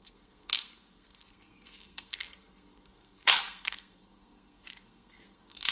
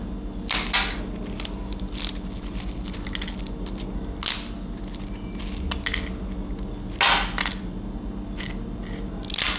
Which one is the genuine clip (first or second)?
second